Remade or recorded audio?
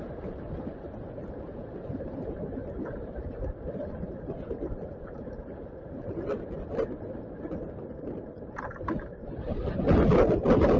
recorded